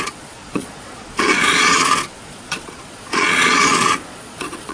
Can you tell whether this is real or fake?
fake